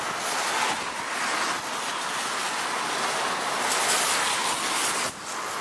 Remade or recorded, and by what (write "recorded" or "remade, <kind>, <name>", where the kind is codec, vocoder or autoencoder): recorded